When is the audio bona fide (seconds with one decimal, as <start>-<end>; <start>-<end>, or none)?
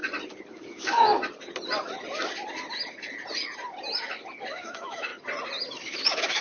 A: 0.0-0.5; 1.1-4.5; 5.1-5.8